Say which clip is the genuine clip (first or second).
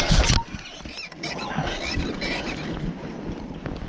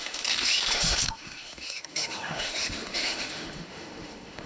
first